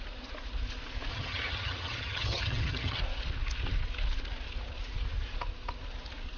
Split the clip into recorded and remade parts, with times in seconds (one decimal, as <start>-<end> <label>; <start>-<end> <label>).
0.0-1.1 recorded; 1.1-3.0 remade; 3.0-6.4 recorded